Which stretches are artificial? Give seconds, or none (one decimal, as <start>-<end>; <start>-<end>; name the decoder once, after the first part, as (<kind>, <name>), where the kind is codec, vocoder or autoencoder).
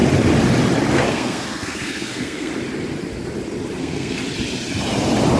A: 0.9-2.5 (codec, SNAC); 3.8-4.2